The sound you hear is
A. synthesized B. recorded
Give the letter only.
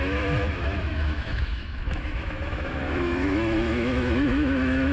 A